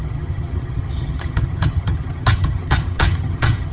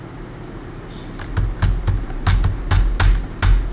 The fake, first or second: first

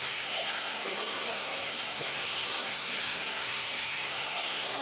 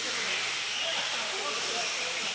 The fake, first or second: first